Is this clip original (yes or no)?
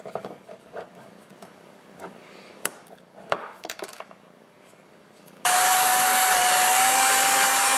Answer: no